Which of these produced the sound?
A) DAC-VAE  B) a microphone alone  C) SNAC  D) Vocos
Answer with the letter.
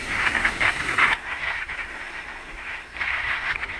C